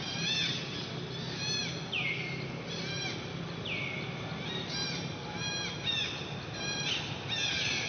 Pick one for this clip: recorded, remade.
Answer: recorded